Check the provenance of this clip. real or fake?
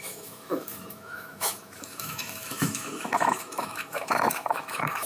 fake